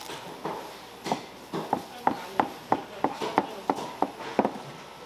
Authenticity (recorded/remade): recorded